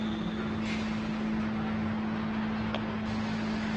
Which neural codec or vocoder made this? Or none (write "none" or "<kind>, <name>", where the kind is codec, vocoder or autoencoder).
none